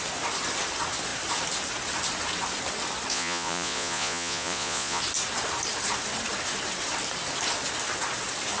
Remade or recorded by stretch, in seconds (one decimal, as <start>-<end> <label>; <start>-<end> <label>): 0.0-3.1 recorded; 3.1-5.0 remade; 5.0-8.6 recorded